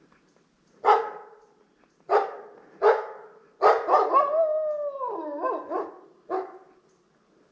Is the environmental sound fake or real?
real